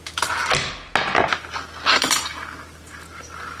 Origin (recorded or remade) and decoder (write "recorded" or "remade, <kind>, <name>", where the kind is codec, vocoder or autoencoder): recorded